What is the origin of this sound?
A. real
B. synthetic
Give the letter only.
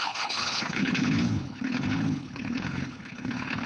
B